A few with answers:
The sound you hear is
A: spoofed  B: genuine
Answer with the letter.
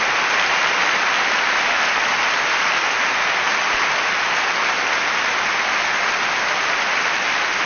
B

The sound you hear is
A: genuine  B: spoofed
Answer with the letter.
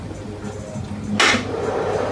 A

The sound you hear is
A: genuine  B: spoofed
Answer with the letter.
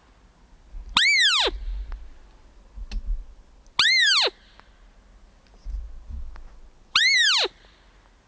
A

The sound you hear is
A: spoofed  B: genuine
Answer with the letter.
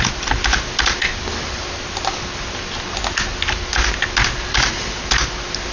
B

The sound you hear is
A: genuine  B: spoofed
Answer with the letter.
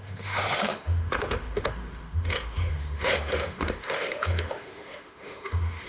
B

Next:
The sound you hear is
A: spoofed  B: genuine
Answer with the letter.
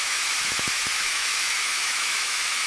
A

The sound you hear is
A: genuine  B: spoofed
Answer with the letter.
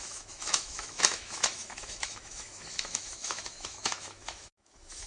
B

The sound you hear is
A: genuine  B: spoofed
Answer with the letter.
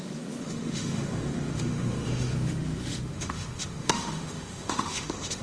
B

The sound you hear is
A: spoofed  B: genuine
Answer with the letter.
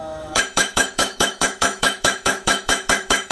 A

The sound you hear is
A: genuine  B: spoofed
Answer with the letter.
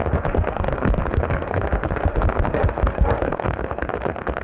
B